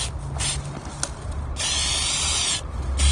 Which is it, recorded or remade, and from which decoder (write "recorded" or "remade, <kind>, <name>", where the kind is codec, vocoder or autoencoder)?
recorded